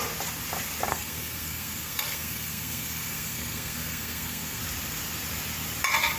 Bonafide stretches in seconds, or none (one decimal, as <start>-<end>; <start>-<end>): 0.0-0.9; 4.6-6.2